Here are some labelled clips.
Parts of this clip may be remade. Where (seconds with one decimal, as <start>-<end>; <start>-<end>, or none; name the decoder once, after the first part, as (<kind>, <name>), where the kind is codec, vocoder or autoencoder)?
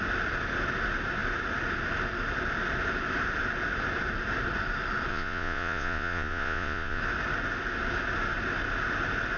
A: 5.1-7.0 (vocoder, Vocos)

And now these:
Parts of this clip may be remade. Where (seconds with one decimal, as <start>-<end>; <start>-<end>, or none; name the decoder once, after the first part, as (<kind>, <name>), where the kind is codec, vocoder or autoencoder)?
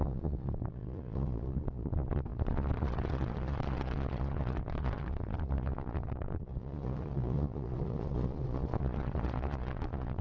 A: 0.0-10.2 (vocoder, Vocos)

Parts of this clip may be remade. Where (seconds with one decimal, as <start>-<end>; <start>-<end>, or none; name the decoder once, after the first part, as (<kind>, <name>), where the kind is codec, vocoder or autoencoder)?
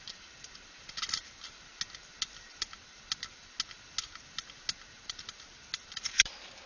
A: none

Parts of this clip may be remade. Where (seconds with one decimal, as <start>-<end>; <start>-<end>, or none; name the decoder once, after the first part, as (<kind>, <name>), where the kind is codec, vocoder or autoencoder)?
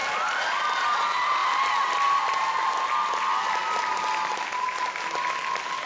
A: none